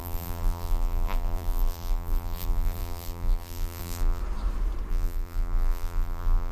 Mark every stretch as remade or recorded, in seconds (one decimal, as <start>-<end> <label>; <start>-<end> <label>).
0.0-4.2 remade; 4.2-4.9 recorded; 4.9-6.5 remade